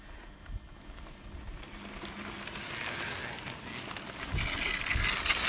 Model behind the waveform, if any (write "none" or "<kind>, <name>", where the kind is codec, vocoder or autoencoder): none